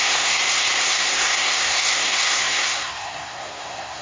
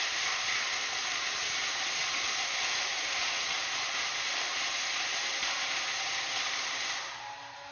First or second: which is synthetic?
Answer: first